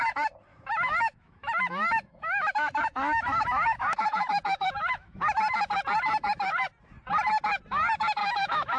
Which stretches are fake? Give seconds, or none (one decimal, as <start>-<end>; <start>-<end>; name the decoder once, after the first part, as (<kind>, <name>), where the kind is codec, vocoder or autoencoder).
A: 0.5-5.2 (autoencoder, DAC-VAE); 8.2-8.8